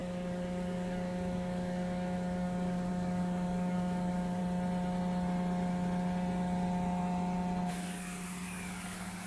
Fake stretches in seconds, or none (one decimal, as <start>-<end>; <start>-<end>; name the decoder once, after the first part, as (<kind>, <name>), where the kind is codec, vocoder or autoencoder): 0.0-4.4 (codec, DAC); 7.7-9.3